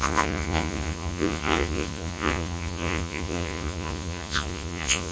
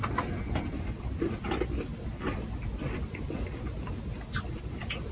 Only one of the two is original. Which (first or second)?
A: second